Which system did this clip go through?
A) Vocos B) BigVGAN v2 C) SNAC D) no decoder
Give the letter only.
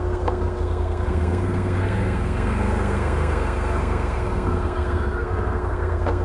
C